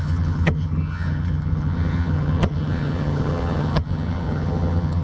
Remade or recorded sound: remade